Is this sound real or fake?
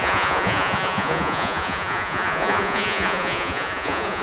fake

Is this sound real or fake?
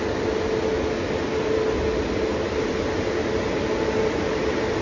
real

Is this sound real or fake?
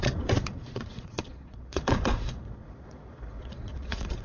fake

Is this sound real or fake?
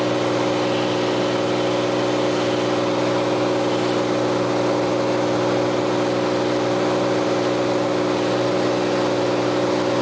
real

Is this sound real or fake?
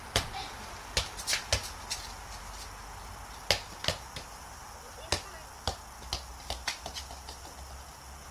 real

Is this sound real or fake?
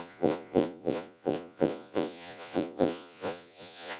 fake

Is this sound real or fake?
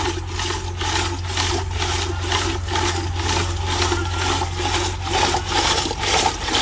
real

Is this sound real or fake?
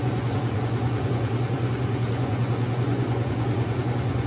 fake